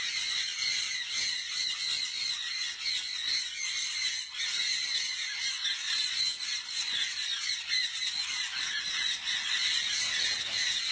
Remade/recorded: recorded